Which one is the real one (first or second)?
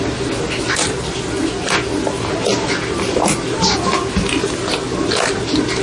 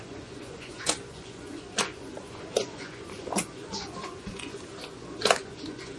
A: first